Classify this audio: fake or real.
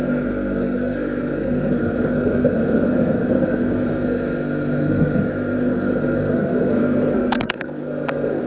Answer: fake